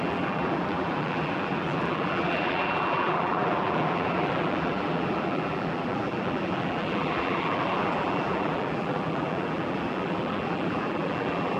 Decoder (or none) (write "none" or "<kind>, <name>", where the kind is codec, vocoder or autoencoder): vocoder, BigVGAN v2